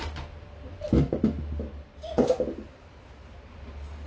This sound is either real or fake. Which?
real